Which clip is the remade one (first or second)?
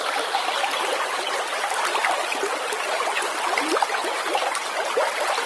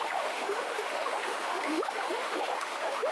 second